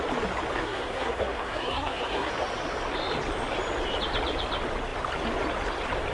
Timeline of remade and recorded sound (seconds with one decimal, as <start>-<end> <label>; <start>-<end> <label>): 0.0-0.6 recorded; 0.6-2.3 remade; 2.3-6.1 recorded